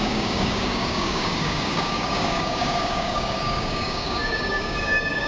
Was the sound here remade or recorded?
remade